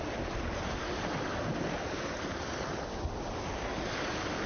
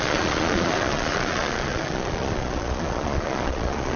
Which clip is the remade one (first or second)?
second